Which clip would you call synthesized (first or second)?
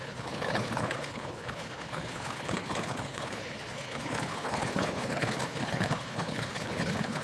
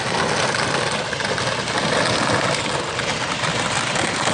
first